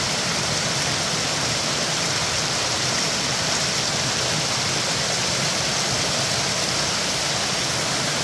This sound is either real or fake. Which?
fake